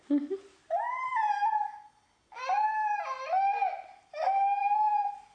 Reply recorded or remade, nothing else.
recorded